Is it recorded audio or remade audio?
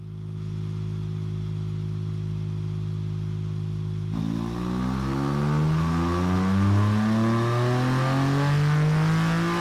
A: recorded